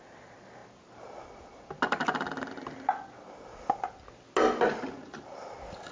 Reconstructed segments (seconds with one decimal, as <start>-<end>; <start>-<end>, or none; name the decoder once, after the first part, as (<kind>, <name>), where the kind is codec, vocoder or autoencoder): none